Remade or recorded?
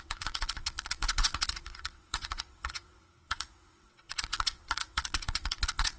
remade